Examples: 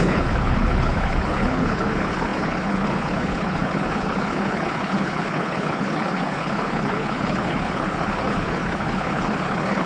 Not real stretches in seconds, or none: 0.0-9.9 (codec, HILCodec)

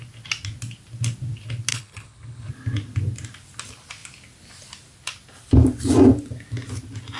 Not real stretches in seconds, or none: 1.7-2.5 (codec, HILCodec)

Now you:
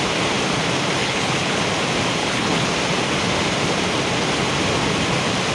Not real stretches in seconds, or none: 1.0-1.6 (codec, HILCodec); 2.2-2.7

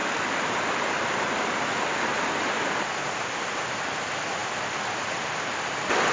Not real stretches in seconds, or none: none

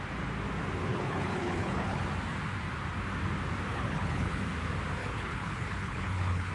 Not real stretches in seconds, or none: 0.9-2.0 (codec, HILCodec); 3.7-4.4; 5.0-6.5